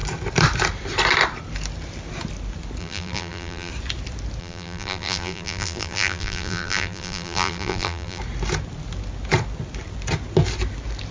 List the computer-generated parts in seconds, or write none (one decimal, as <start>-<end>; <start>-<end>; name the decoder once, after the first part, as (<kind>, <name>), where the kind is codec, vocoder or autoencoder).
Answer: 2.8-3.7 (vocoder, BigVGAN v2); 4.4-8.2